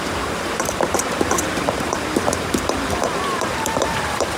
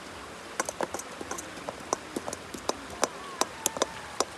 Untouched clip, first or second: second